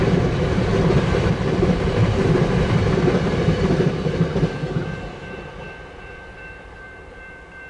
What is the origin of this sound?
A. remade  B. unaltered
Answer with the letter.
A